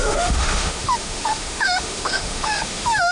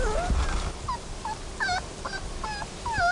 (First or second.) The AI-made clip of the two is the first